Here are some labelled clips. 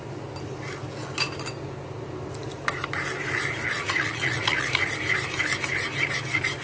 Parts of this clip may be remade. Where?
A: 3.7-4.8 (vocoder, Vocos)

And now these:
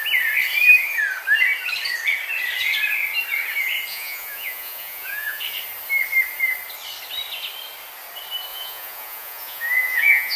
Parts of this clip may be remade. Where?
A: 3.9-5.4 (vocoder, Vocos); 8.5-10.4

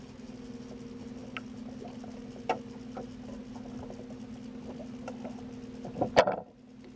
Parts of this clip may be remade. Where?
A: none